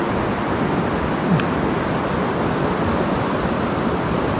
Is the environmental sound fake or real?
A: real